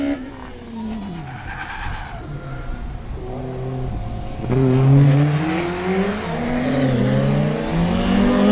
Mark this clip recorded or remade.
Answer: recorded